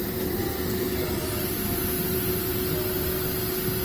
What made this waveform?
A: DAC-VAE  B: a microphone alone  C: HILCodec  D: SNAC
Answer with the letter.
B